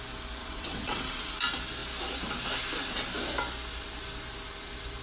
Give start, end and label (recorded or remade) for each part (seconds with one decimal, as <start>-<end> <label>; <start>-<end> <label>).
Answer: 0.0-0.4 recorded; 0.4-1.3 remade; 1.3-5.0 recorded